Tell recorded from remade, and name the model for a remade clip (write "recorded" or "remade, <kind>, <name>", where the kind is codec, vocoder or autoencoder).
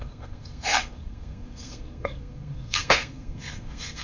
remade, codec, SNAC